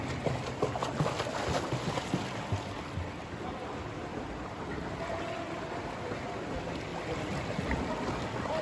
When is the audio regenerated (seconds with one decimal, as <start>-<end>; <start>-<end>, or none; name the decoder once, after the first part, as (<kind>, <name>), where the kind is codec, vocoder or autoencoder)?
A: none